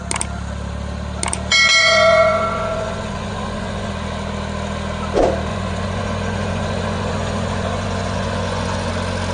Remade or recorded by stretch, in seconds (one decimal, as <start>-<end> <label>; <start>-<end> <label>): 0.0-1.8 recorded; 1.8-3.9 remade; 3.9-5.5 recorded; 5.5-8.9 remade; 8.9-9.3 recorded